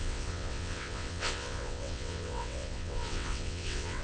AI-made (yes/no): yes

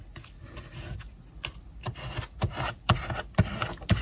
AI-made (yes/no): no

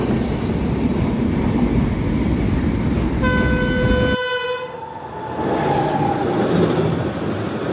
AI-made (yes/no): no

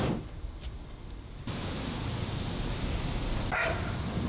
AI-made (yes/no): no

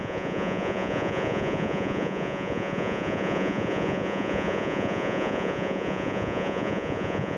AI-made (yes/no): yes